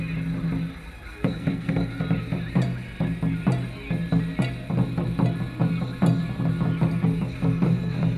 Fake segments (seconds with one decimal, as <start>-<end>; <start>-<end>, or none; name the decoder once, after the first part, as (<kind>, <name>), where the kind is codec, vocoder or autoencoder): 1.1-2.0 (codec, SNAC)